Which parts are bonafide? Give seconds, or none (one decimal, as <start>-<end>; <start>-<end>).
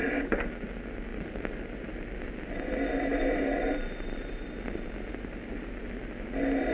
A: 0.0-6.7